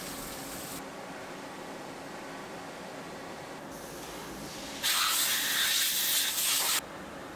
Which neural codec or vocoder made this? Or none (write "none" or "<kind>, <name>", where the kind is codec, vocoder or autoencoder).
none